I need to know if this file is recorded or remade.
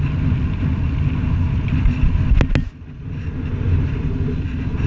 recorded